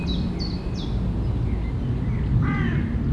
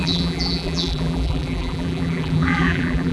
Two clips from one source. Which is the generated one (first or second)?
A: second